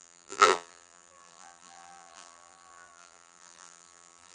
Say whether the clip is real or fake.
fake